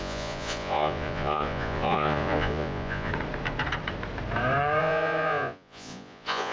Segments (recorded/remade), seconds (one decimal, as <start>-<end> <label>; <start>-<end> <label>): 0.0-3.1 remade; 3.1-4.8 recorded; 4.8-6.5 remade